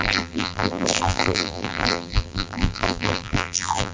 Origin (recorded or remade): remade